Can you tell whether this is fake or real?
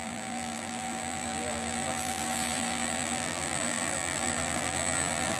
fake